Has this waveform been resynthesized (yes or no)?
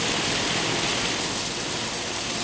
no